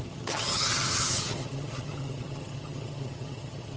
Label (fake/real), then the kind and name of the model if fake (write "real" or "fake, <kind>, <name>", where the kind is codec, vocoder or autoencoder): fake, vocoder, HiFi-GAN